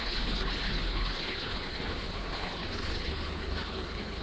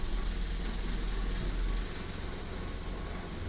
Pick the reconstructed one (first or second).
first